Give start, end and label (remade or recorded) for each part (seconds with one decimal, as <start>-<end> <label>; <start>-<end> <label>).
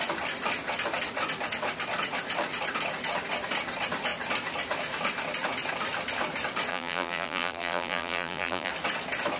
0.0-6.7 recorded; 6.7-8.7 remade; 8.7-9.4 recorded